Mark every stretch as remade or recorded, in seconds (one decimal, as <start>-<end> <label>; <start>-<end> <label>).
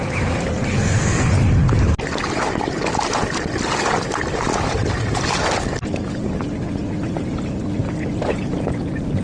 0.0-0.7 recorded; 0.7-1.3 remade; 1.3-9.2 recorded